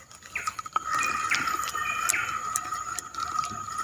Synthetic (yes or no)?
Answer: no